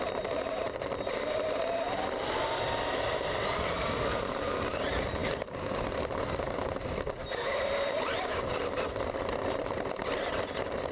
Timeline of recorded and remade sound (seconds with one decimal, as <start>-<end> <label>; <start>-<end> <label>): 0.0-10.9 recorded